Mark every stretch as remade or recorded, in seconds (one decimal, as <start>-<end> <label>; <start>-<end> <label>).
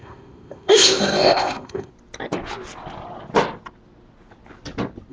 0.0-1.9 remade; 1.9-5.1 recorded